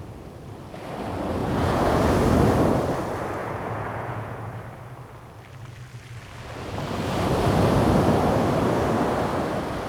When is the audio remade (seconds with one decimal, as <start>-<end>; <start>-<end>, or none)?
1.4-2.0; 3.4-4.5